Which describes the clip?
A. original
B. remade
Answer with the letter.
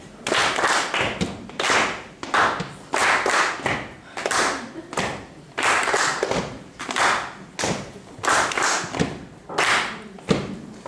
A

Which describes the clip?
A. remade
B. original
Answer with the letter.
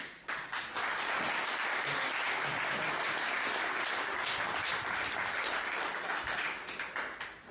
B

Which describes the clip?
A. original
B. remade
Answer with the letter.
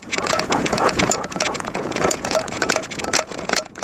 B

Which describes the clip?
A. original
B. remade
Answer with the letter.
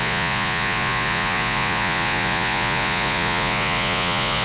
B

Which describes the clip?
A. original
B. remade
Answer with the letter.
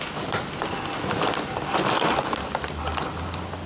A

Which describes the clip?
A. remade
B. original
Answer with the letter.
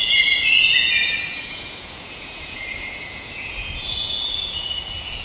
A